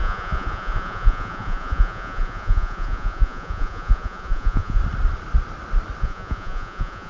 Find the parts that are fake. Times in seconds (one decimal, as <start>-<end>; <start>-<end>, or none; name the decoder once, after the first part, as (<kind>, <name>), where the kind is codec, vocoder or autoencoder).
0.0-4.8 (vocoder, Vocos); 6.0-7.1